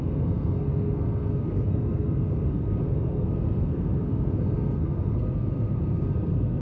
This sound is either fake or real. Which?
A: fake